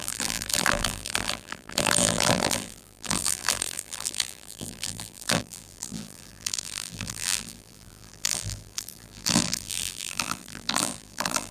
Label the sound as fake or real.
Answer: fake